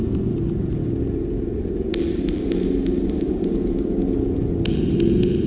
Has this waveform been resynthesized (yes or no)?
no